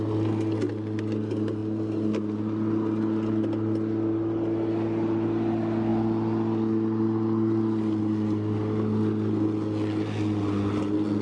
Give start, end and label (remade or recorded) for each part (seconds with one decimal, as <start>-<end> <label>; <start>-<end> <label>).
0.0-11.2 recorded